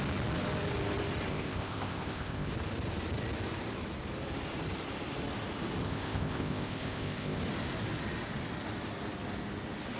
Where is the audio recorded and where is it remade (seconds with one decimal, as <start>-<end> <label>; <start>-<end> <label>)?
0.0-1.3 recorded; 1.3-2.5 remade; 2.5-5.8 recorded; 5.8-7.4 remade; 7.4-10.0 recorded